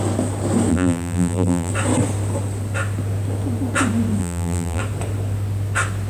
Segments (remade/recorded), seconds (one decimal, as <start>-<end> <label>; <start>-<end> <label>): 0.0-0.7 recorded; 0.7-1.7 remade; 1.7-4.2 recorded; 4.2-4.8 remade; 4.8-6.1 recorded